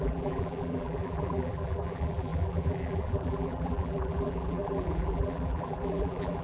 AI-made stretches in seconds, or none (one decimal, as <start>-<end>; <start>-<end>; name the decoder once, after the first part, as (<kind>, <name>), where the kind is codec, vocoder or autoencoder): 0.0-6.4 (vocoder, BigVGAN v2)